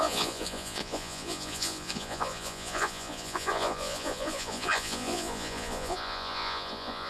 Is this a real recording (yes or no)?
no